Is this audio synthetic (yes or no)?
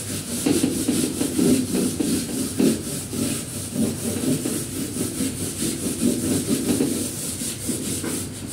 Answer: yes